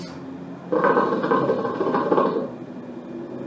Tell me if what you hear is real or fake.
real